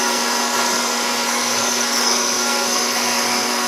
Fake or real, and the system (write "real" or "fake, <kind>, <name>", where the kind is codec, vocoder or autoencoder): fake, codec, SNAC